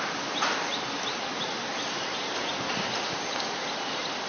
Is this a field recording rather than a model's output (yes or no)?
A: yes